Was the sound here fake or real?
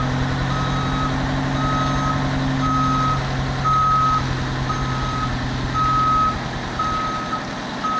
real